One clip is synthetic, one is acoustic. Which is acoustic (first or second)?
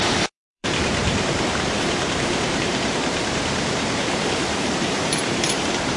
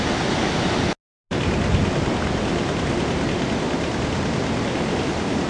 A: second